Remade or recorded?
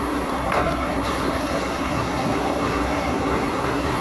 remade